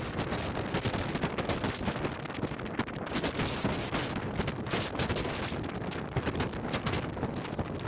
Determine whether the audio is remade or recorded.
recorded